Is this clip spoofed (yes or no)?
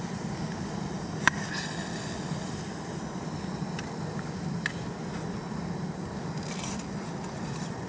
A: no